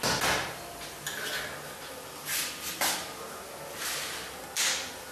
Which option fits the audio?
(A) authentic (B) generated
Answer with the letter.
A